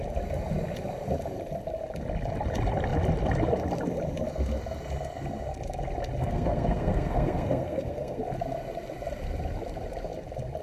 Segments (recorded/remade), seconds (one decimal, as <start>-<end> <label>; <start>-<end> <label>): 0.0-6.2 recorded; 6.2-8.2 remade; 8.2-10.6 recorded